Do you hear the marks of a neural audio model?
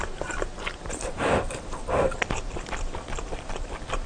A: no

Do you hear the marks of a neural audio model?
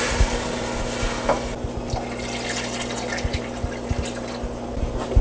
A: no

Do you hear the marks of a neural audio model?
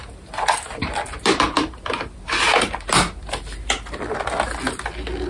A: no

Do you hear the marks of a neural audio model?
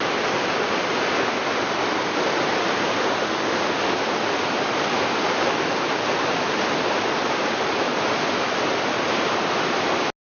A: no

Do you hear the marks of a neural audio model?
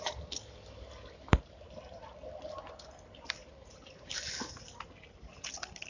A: no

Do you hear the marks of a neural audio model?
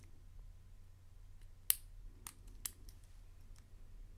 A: no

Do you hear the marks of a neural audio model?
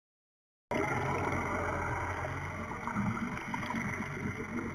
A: no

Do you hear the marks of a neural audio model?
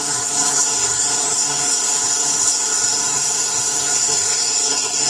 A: yes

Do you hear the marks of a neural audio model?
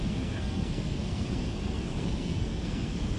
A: yes